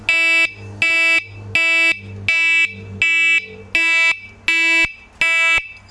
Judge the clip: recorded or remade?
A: recorded